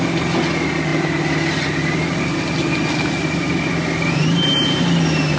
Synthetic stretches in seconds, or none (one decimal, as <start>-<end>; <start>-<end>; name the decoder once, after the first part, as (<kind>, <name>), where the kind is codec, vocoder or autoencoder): none